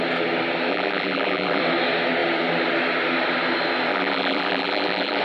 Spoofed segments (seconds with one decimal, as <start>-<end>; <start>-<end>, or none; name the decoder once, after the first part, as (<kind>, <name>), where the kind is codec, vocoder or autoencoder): 0.7-1.6 (vocoder, BigVGAN v2); 3.9-5.2